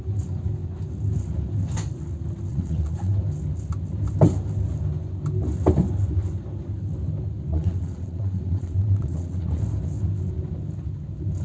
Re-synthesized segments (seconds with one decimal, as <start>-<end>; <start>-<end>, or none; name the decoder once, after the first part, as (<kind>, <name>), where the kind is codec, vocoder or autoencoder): 2.5-3.2 (vocoder, WaveNeXt); 7.5-9.6